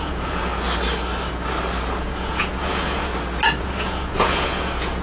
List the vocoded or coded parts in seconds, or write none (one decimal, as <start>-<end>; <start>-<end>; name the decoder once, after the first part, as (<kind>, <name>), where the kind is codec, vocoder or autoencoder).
0.0-0.5 (vocoder, Vocos); 2.0-3.1; 3.6-5.0